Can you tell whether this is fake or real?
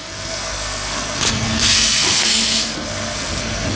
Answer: fake